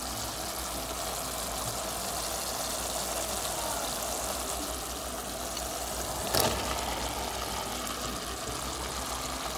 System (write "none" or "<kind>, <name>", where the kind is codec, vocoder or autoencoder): none